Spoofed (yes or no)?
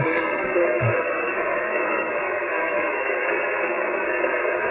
yes